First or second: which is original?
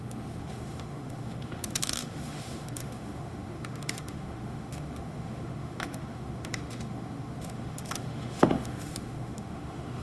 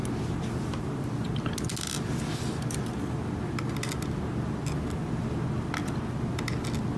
second